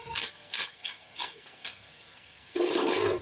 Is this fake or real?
fake